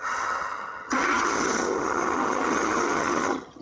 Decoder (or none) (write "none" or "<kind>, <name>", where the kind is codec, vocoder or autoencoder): vocoder, HiFi-GAN